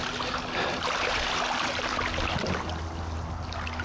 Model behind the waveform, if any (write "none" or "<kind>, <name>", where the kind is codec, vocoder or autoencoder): none